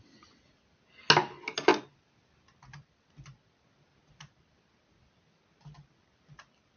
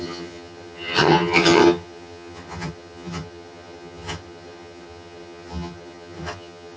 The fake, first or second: second